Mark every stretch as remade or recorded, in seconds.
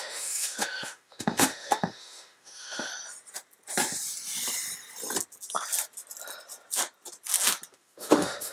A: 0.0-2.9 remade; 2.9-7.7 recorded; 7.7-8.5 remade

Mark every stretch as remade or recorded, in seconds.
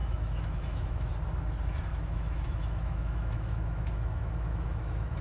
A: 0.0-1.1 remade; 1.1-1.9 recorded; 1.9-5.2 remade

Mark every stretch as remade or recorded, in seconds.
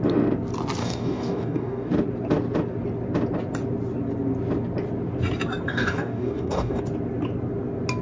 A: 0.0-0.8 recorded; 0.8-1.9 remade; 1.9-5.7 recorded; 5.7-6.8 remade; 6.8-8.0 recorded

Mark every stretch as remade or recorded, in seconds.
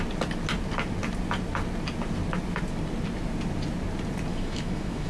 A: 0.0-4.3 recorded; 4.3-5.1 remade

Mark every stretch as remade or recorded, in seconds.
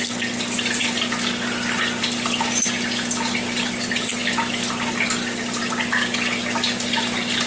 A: 0.0-7.5 recorded